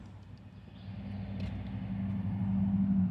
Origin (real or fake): real